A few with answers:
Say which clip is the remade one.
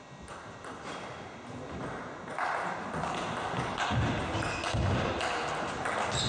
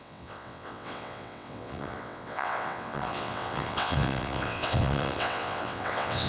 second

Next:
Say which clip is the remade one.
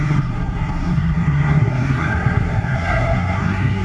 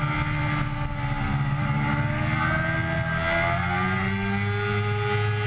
first